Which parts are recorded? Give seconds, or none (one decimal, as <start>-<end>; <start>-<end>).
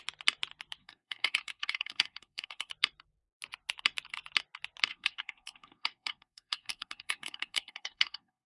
0.0-0.8; 2.7-4.9